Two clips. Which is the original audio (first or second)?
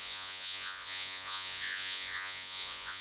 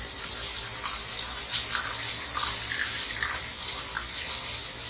second